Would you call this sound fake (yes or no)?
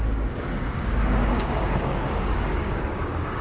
yes